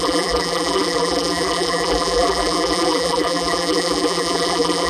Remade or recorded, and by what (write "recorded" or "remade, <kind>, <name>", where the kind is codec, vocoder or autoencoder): remade, vocoder, BigVGAN v2